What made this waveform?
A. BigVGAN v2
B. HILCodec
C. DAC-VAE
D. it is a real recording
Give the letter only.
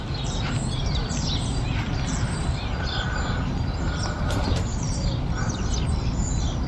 D